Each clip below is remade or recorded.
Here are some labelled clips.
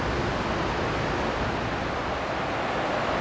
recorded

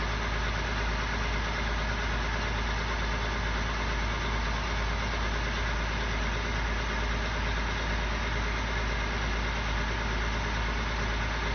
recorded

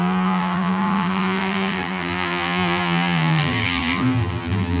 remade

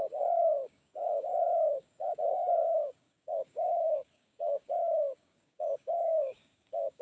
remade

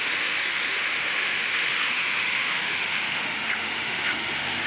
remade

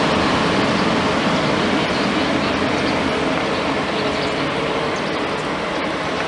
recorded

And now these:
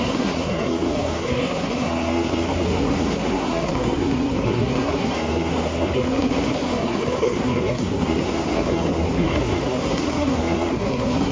remade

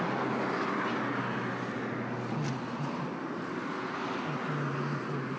recorded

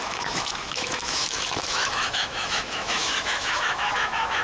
remade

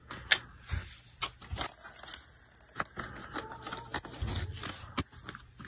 recorded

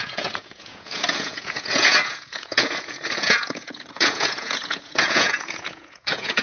remade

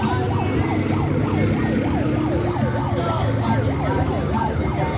recorded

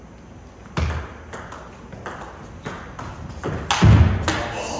recorded